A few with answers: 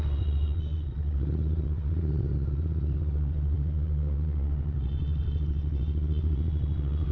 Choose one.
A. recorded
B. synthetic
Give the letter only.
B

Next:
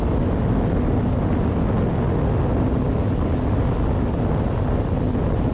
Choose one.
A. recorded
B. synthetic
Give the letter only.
A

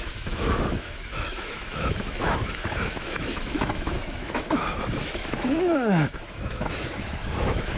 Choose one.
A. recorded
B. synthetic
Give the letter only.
B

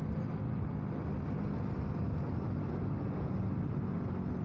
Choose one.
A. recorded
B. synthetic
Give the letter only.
A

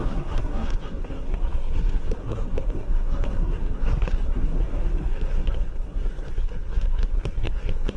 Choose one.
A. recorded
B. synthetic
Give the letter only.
B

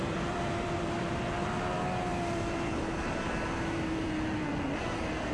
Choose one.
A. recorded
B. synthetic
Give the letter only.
B